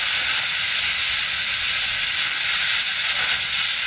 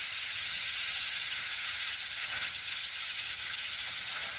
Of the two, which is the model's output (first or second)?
second